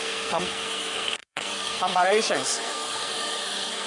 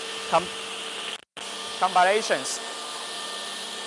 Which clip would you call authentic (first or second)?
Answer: second